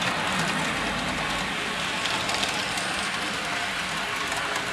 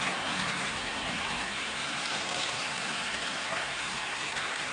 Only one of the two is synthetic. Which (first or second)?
second